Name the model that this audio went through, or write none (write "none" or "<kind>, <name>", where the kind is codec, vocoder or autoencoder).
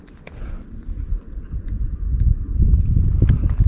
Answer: none